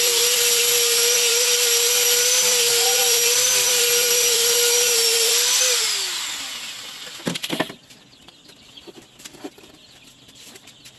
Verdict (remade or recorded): remade